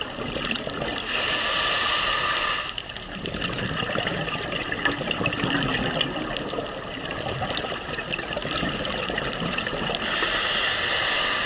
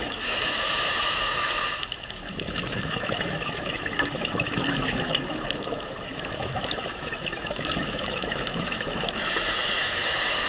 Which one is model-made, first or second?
second